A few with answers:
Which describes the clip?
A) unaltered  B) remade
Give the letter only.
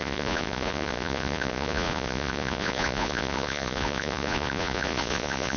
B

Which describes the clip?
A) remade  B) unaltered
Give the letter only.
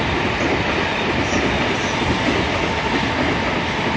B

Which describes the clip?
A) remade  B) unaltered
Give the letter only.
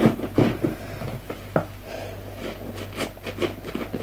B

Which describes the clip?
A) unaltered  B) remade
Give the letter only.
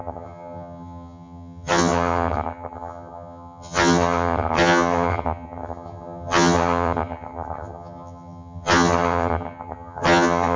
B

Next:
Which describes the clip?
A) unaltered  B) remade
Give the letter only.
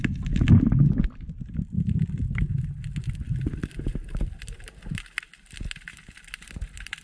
A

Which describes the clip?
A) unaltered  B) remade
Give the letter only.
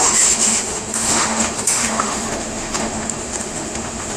B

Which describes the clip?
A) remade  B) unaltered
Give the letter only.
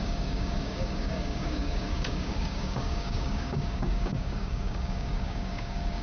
A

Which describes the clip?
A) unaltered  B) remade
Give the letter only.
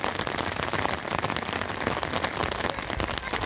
A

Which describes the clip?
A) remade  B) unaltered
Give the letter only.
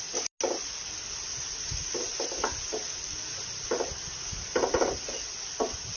B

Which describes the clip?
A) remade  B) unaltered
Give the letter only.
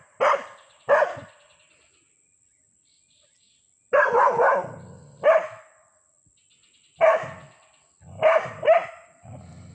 B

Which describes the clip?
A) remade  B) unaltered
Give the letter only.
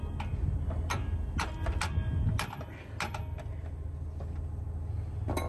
B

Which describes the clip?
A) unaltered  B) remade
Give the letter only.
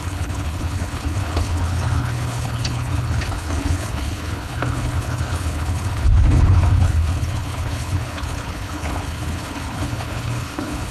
B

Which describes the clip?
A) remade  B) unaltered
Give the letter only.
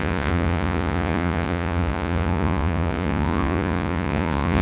A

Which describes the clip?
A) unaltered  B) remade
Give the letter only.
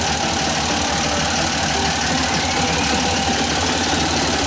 A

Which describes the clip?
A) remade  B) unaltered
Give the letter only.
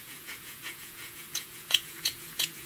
A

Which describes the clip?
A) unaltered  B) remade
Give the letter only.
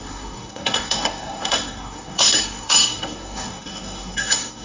B